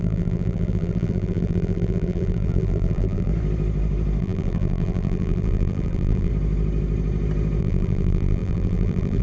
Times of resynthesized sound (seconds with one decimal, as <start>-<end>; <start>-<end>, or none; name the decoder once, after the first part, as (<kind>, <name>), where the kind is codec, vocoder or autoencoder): 0.0-3.3 (vocoder, BigVGAN v2); 4.2-6.3; 7.6-9.2